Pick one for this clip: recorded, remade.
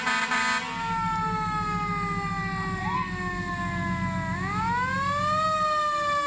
recorded